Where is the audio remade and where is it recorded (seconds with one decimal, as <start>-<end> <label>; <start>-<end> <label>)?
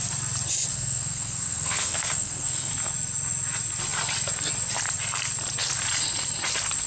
0.0-0.7 recorded; 0.7-2.7 remade; 2.7-6.9 recorded